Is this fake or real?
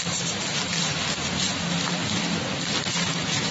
real